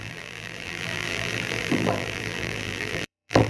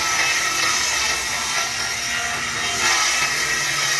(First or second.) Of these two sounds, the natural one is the second